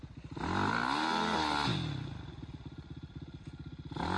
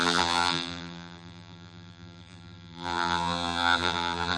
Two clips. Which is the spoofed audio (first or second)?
second